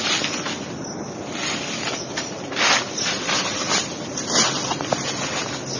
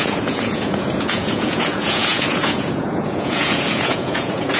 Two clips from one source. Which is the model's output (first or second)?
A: second